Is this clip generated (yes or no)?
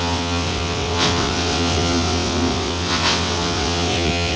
yes